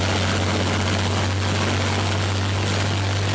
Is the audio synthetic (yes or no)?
no